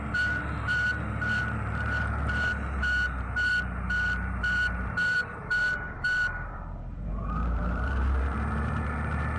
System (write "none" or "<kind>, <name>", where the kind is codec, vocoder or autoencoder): vocoder, BigVGAN v2